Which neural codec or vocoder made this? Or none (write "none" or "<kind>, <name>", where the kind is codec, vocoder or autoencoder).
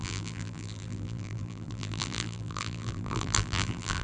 vocoder, BigVGAN v2